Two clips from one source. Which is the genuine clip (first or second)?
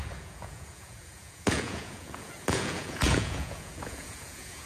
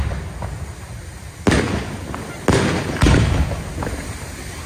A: second